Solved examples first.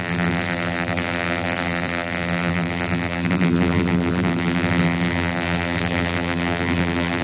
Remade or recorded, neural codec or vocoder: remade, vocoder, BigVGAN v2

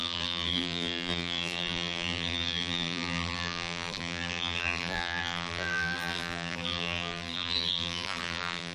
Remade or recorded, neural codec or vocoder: remade, vocoder, BigVGAN v2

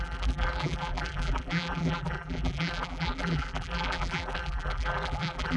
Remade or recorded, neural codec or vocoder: remade, vocoder, BigVGAN v2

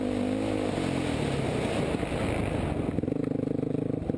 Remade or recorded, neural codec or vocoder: recorded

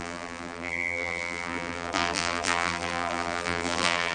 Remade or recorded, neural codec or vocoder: remade, vocoder, BigVGAN v2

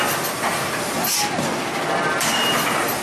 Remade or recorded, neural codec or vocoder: recorded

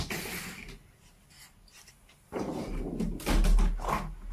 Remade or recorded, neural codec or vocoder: recorded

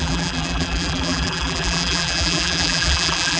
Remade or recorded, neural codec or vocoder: remade, vocoder, BigVGAN v2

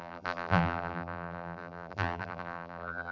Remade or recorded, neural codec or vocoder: remade, vocoder, BigVGAN v2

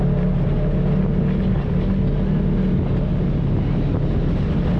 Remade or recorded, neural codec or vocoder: recorded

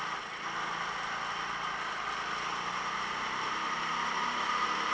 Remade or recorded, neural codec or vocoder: recorded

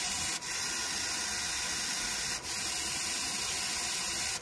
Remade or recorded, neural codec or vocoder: recorded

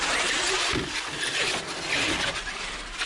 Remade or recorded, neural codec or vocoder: recorded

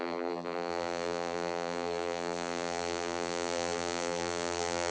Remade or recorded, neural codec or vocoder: remade, vocoder, BigVGAN v2